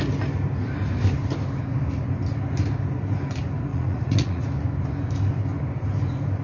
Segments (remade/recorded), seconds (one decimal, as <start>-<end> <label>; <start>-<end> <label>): 0.0-3.7 recorded; 3.7-4.4 remade; 4.4-6.4 recorded